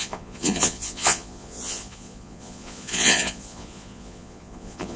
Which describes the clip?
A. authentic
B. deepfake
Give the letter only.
B